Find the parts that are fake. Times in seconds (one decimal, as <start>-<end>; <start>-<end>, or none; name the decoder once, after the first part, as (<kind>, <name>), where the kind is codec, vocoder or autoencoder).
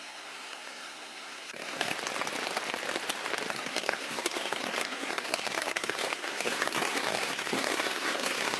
0.0-1.9 (codec, SNAC); 3.5-8.6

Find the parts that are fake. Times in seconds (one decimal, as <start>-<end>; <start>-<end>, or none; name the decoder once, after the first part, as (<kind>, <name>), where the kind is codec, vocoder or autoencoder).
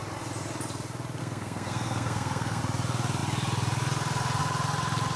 1.2-2.6 (codec, SNAC)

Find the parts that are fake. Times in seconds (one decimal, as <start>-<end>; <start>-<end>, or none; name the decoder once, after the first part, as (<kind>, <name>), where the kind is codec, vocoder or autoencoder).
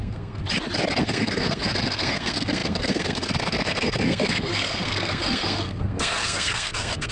0.0-0.4 (codec, SNAC); 1.0-7.1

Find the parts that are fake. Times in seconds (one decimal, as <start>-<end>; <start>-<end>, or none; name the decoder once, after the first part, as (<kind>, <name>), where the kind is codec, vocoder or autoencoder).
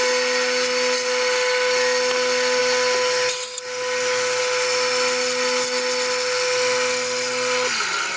none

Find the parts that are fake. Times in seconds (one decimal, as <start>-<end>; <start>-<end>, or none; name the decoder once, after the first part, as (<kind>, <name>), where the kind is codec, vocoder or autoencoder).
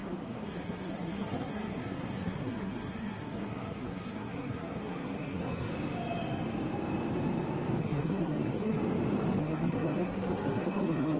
0.0-5.7 (codec, SNAC); 7.8-8.8; 9.4-11.2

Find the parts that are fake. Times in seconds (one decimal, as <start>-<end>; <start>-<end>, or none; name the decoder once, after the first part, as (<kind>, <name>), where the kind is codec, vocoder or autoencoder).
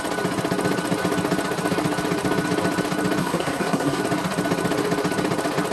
3.2-4.0 (codec, SNAC)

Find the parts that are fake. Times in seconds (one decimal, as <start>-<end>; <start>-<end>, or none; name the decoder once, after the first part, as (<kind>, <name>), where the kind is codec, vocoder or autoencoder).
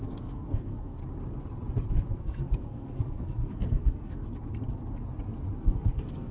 0.0-1.0 (codec, SNAC); 2.2-4.2; 5.6-6.3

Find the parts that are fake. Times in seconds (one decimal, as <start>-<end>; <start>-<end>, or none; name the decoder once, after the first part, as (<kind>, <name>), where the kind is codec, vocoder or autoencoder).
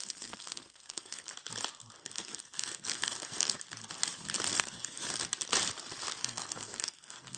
0.0-1.3 (codec, SNAC); 2.0-3.6; 4.5-5.0; 6.2-7.4